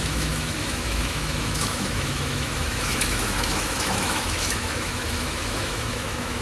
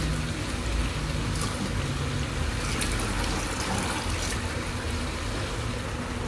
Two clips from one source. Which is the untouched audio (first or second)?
second